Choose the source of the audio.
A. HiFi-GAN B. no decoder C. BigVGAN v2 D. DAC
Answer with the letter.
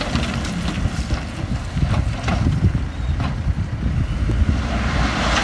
B